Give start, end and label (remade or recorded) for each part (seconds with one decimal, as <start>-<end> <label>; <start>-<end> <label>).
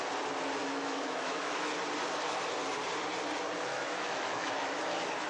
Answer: 0.0-0.6 recorded; 0.6-1.7 remade; 1.7-3.7 recorded; 3.7-4.8 remade; 4.8-5.3 recorded